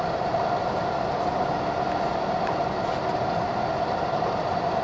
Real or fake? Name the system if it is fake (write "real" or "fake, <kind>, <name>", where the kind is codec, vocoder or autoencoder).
real